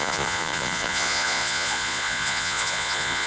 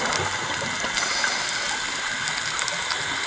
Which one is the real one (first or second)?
second